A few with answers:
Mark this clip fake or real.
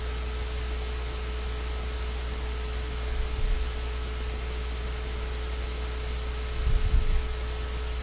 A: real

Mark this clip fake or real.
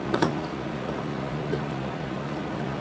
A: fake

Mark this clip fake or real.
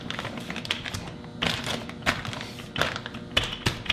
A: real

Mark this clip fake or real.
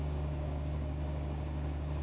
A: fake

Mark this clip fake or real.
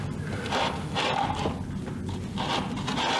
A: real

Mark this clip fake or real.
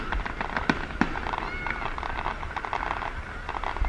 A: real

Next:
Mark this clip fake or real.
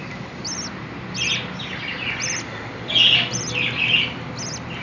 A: real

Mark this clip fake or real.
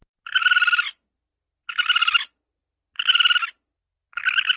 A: real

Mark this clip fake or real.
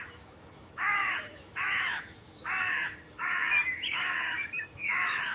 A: fake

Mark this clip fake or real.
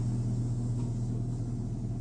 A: real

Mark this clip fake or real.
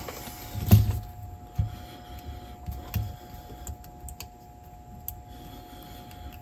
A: real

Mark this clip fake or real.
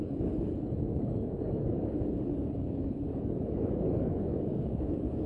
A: fake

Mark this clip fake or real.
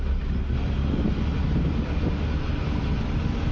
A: real